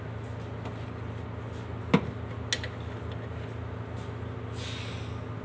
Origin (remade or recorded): recorded